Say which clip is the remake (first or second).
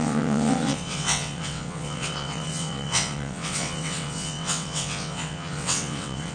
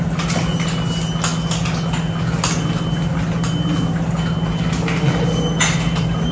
first